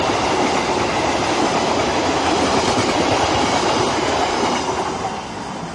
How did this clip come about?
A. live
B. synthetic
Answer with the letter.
A